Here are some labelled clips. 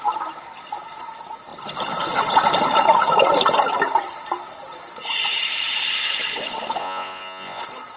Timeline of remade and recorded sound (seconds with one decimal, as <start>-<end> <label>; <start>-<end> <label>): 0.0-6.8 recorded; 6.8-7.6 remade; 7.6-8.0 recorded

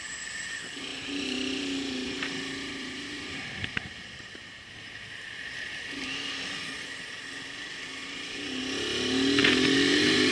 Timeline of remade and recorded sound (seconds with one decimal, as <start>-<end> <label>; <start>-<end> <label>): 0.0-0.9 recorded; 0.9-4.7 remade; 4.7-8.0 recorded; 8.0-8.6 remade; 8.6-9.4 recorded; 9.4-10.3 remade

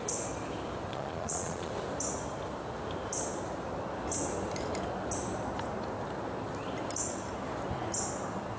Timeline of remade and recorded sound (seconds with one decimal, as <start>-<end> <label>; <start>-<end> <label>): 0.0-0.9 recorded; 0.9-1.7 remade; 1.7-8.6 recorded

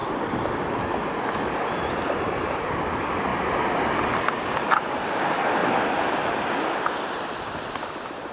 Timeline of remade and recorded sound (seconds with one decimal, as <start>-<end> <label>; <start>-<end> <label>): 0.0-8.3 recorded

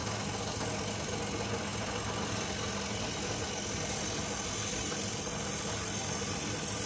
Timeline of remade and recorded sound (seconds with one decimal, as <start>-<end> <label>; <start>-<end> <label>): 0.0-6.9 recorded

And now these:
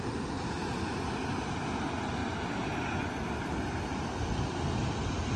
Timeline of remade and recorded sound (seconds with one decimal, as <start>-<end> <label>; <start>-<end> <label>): 0.0-5.4 recorded

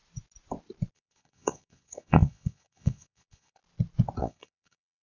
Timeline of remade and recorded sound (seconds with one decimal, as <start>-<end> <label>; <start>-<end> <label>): 0.0-0.9 recorded; 0.9-3.6 remade; 3.6-4.2 recorded; 4.2-5.0 remade

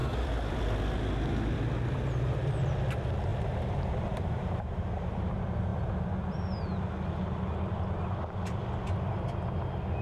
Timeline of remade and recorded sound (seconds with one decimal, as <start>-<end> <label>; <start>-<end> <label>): 0.0-3.3 recorded; 3.3-5.3 remade; 5.3-10.0 recorded